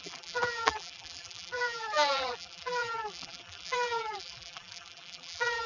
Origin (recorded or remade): remade